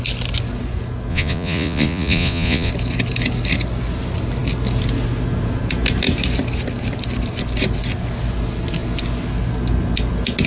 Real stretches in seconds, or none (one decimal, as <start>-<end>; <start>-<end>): 0.0-1.1; 2.7-10.5